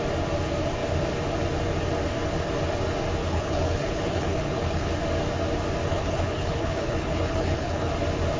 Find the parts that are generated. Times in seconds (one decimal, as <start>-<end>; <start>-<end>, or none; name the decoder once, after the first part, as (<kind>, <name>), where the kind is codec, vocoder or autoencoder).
3.2-4.9 (codec, HILCodec); 5.9-7.9